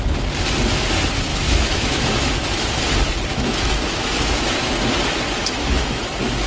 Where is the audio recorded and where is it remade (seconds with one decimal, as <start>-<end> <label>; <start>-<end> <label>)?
0.0-1.3 recorded; 1.3-2.9 remade; 2.9-3.3 recorded; 3.3-4.7 remade; 4.7-5.4 recorded; 5.4-6.0 remade; 6.0-6.5 recorded